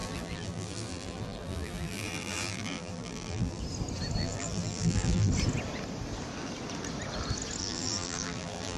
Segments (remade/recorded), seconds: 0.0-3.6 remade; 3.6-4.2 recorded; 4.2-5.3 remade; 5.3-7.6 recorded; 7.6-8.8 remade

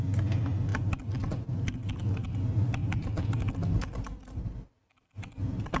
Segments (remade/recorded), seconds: 0.0-0.7 recorded; 0.7-1.7 remade; 1.7-2.8 recorded; 2.8-3.5 remade; 3.5-5.8 recorded

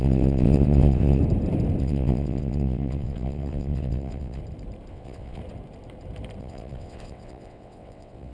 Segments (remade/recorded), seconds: 0.0-1.2 remade; 1.2-1.8 recorded; 1.8-4.4 remade; 4.4-4.9 recorded; 4.9-5.4 remade; 5.4-6.4 recorded; 6.4-8.3 remade

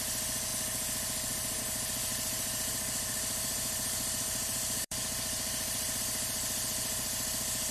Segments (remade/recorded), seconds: 0.0-2.1 recorded; 2.1-6.0 remade; 6.0-7.7 recorded

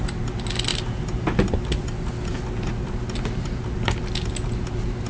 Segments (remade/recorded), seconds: 0.0-5.1 recorded

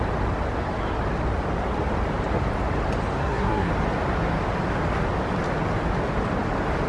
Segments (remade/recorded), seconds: 0.0-3.2 recorded; 3.2-3.7 remade; 3.7-6.9 recorded

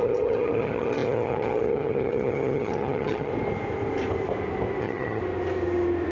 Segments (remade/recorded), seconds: 0.0-3.3 remade; 3.3-4.8 recorded; 4.8-5.2 remade; 5.2-6.1 recorded

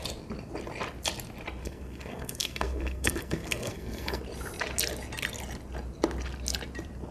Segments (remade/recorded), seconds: 0.0-1.6 recorded; 1.6-4.2 remade; 4.2-7.1 recorded